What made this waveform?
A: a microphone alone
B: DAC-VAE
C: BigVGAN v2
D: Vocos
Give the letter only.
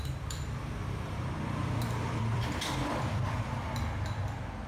C